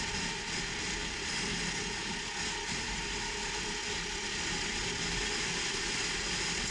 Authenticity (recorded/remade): recorded